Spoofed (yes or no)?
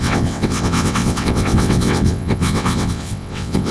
yes